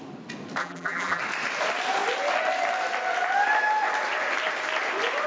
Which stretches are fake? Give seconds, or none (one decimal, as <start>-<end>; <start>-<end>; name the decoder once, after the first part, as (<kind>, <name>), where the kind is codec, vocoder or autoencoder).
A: 0.6-1.2 (vocoder, BigVGAN v2)